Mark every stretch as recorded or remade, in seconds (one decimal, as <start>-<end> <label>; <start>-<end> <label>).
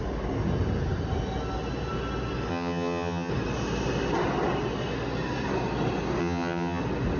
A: 0.0-2.5 recorded; 2.5-3.3 remade; 3.3-6.2 recorded; 6.2-6.8 remade; 6.8-7.2 recorded